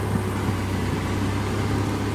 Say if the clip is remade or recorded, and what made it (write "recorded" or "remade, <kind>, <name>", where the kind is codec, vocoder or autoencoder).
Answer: recorded